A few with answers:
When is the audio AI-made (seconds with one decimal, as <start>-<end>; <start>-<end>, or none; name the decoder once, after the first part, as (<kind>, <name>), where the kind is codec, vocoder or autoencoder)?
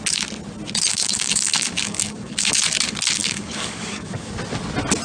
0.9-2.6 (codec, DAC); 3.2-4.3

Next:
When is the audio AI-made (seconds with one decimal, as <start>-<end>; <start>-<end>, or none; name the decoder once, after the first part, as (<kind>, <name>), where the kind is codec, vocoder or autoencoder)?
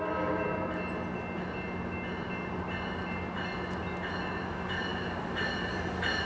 none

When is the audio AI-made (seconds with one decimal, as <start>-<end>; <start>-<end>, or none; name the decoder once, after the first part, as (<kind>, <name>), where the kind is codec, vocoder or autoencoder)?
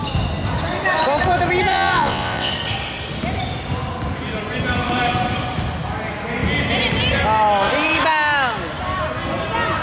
1.7-2.5 (vocoder, WaveNeXt)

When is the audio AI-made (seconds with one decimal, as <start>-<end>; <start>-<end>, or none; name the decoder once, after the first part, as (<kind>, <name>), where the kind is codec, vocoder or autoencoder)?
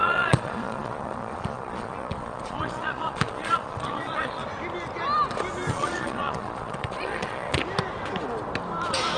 0.0-4.4 (vocoder, Vocos); 5.7-7.6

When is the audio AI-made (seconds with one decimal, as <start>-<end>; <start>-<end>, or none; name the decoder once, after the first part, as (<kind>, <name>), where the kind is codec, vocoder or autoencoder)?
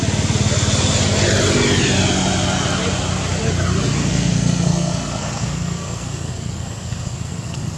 4.0-7.8 (codec, SNAC)